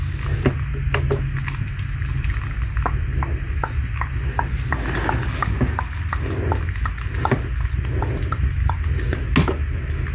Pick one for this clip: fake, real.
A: real